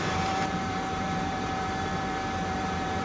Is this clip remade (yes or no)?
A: yes